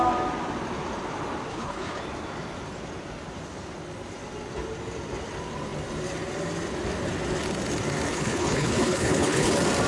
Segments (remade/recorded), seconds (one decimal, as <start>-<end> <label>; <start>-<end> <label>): 0.0-1.5 recorded; 1.5-2.0 remade; 2.0-8.1 recorded; 8.1-9.5 remade; 9.5-9.9 recorded